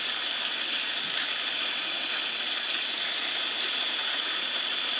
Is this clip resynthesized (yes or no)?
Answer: no